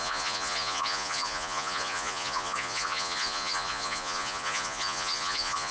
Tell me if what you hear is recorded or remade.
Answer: remade